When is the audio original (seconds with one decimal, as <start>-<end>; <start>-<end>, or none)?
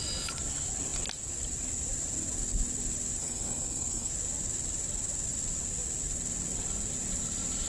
0.0-3.2; 4.1-7.7